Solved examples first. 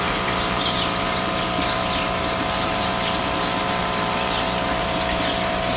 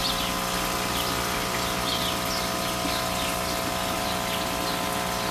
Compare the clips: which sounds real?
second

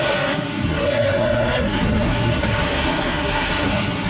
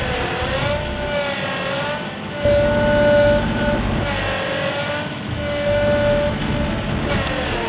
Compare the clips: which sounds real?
second